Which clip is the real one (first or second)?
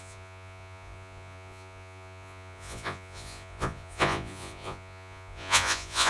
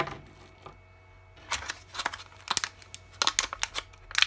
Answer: second